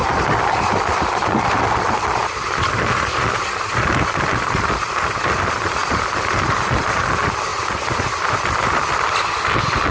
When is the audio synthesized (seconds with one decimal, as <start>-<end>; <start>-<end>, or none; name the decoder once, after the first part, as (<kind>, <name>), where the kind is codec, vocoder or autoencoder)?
0.0-3.4 (vocoder, BigVGAN v2); 5.8-7.0; 7.5-8.9